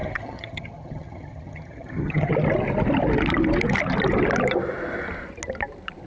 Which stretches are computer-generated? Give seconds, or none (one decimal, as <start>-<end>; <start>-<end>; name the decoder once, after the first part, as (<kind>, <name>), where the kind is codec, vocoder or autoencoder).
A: 0.0-2.3 (vocoder, HiFi-GAN)